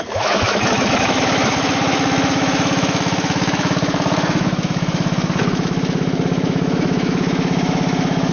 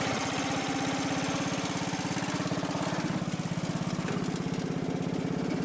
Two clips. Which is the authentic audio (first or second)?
second